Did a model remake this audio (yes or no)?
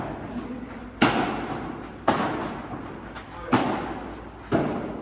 no